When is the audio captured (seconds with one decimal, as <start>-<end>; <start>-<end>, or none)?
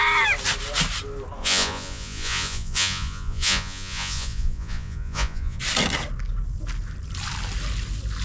0.0-1.4; 5.6-8.2